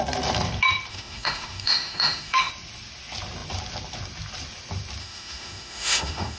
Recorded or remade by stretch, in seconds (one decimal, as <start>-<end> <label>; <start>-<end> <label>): 0.0-0.9 recorded; 0.9-2.5 remade; 2.5-5.0 recorded; 5.0-6.4 remade